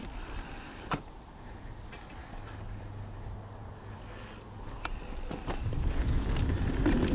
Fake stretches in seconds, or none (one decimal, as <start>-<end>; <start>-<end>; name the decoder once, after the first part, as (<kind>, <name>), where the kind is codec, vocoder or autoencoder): 2.2-2.8 (codec, DAC); 3.6-4.4